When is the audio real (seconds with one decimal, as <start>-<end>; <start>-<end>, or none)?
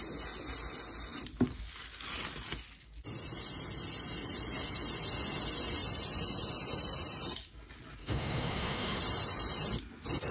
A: 0.0-8.0; 9.0-10.3